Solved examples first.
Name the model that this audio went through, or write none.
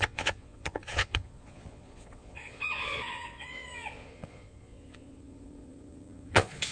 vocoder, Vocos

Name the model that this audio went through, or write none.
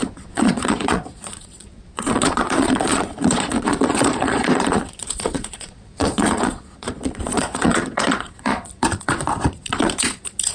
vocoder, Vocos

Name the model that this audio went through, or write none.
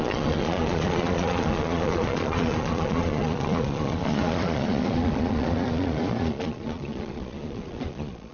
vocoder, Vocos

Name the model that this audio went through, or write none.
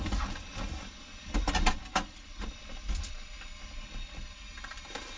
none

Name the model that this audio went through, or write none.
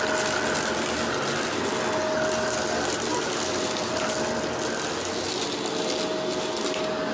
none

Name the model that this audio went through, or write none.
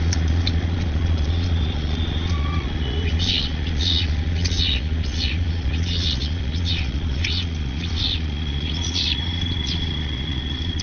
vocoder, Vocos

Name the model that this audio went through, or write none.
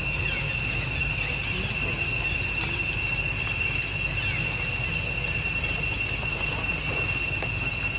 none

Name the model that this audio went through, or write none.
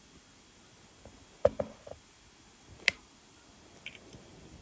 none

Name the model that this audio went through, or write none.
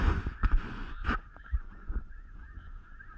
vocoder, Vocos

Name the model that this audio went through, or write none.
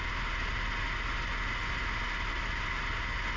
none